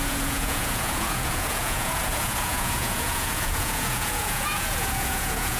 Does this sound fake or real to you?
fake